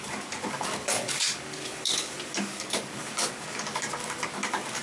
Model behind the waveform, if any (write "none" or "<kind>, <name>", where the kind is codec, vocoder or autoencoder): codec, DAC